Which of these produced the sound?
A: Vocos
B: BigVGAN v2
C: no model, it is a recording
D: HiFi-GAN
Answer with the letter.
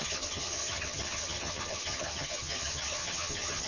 D